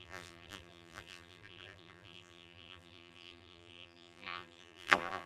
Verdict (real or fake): fake